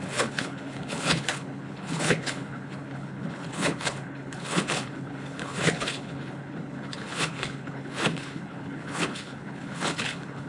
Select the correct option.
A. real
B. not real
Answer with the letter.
B